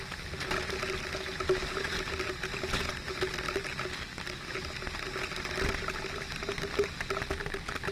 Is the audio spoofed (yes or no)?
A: no